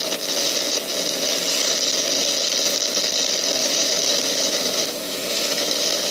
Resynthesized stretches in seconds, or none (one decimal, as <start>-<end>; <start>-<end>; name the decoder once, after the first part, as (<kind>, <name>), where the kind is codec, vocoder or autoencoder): 3.6-6.1 (autoencoder, DAC-VAE)